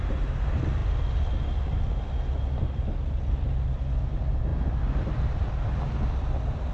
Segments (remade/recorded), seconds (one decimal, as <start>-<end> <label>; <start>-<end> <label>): 0.0-6.7 recorded